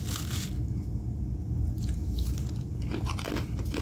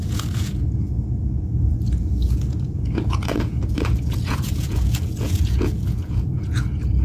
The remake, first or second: second